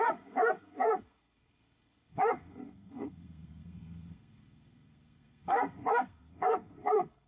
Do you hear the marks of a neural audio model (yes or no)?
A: yes